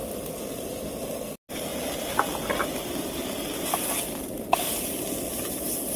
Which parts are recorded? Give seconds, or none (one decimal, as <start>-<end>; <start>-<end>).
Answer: 0.0-6.0